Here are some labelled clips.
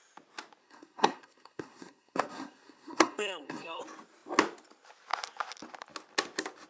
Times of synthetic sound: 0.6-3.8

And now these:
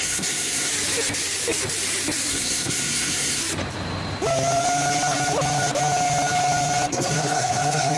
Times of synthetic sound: 0.0-0.7; 2.3-3.4; 6.9-8.0